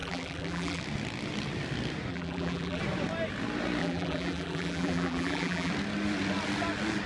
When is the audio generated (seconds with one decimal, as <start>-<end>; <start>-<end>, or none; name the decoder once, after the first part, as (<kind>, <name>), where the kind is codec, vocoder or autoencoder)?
0.0-0.8 (vocoder, BigVGAN v2); 2.1-2.8; 3.8-5.7